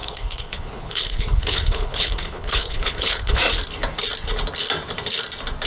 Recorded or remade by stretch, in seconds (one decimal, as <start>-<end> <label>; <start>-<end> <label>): 0.0-3.4 remade; 3.4-5.7 recorded